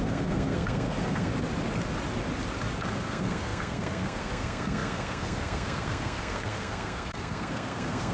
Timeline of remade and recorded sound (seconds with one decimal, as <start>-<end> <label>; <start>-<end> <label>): 0.0-1.3 remade; 1.3-2.8 recorded; 2.8-8.1 remade